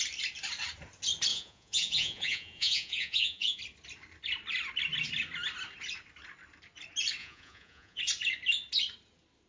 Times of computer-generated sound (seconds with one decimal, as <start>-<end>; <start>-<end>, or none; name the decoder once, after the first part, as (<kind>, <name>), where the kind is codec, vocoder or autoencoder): 1.3-3.6 (vocoder, Vocos); 7.2-8.0